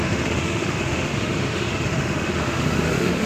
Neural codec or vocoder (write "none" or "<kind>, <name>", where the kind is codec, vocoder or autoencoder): autoencoder, DAC-VAE